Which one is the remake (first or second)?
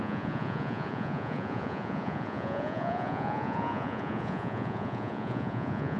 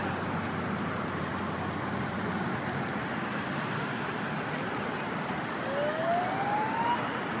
first